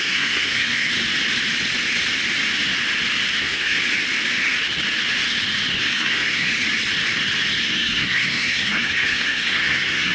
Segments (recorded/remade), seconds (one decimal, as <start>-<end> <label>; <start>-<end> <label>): 0.0-0.9 remade; 0.9-3.4 recorded; 3.4-3.8 remade; 3.8-5.8 recorded; 5.8-6.5 remade; 6.5-7.6 recorded; 7.6-10.1 remade